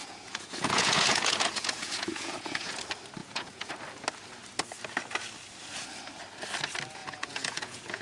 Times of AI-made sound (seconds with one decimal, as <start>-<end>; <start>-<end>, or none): 0.0-2.7; 3.2-3.7; 7.0-8.0